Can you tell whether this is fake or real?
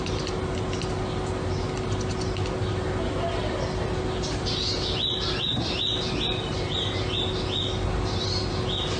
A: real